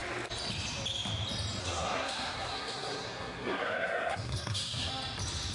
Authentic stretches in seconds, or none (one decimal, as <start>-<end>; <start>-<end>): 0.0-1.6; 4.9-5.5